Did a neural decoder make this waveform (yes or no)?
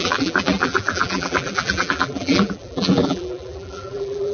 yes